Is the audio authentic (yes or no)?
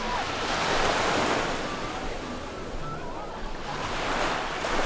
yes